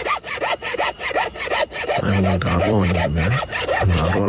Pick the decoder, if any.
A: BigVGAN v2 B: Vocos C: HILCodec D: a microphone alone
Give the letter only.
A